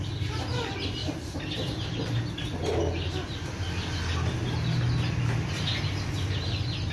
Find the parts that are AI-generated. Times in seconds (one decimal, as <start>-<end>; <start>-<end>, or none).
1.0-2.3